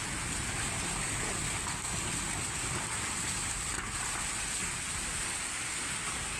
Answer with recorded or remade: recorded